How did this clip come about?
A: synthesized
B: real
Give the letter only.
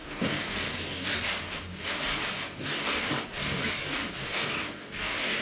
A